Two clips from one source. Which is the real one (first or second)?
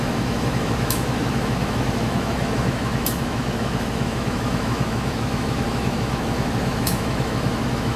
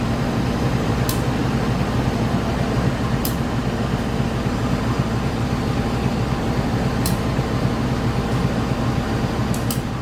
second